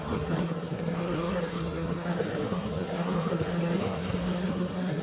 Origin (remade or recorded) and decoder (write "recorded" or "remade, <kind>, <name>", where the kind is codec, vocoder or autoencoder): remade, codec, SNAC